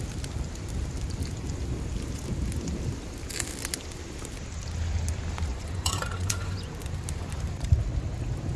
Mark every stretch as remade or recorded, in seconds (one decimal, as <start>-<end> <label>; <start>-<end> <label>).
0.0-5.5 recorded; 5.5-6.7 remade; 6.7-8.6 recorded